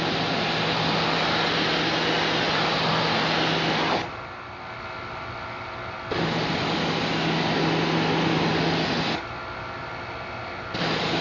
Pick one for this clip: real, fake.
real